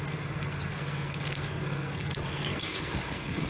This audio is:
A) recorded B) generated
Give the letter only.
B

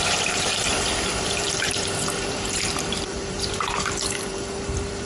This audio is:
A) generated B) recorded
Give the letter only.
A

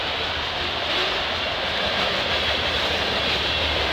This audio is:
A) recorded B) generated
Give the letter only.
A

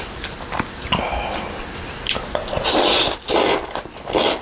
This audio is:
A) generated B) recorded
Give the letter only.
B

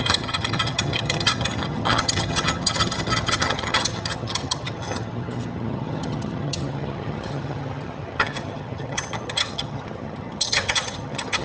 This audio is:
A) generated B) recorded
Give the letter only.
A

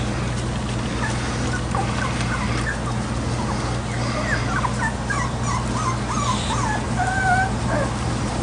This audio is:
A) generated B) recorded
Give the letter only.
B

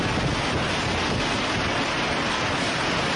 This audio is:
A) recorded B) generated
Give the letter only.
A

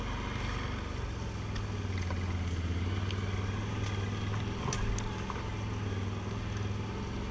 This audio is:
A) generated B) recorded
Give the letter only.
B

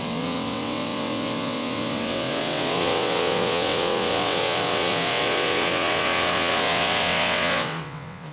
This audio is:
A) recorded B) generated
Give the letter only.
B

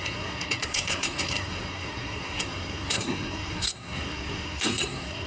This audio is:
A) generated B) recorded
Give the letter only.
A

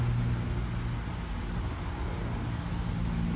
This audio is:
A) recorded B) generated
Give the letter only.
A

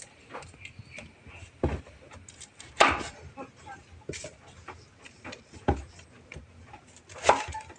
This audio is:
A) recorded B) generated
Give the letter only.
A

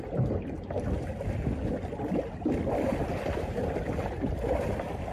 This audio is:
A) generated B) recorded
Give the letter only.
B